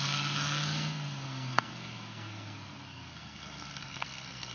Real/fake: fake